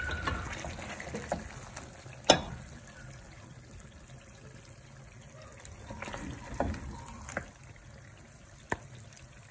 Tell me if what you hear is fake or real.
real